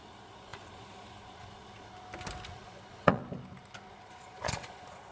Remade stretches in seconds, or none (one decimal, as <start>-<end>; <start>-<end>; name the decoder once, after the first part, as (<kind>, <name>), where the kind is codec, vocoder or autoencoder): 0.0-1.9 (vocoder, Vocos); 2.5-3.2; 3.9-5.1